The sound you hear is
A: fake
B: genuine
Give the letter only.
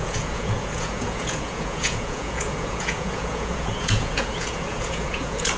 A